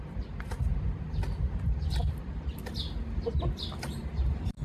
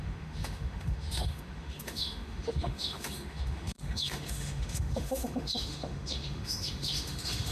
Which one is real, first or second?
first